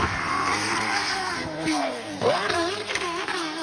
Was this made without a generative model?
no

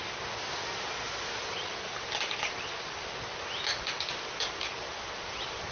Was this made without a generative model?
yes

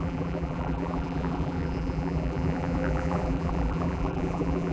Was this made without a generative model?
no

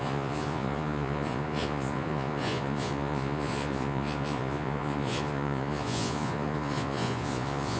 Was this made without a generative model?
no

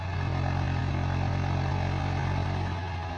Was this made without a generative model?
yes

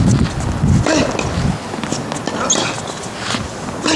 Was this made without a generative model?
yes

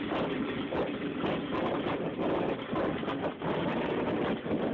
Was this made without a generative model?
yes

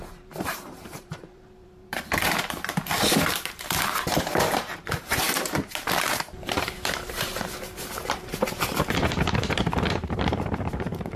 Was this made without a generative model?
no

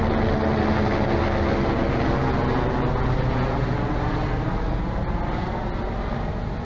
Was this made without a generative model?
yes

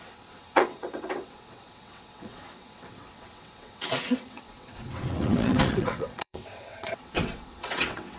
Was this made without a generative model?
no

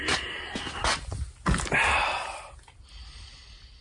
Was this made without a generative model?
yes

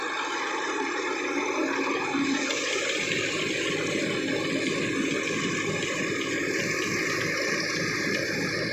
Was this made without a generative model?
yes